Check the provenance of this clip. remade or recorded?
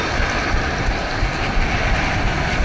recorded